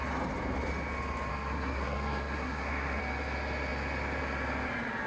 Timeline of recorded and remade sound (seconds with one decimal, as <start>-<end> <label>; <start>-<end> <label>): 0.0-1.3 recorded; 1.3-3.0 remade; 3.0-5.1 recorded